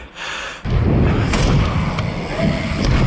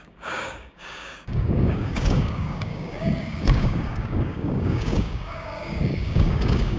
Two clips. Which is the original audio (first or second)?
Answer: first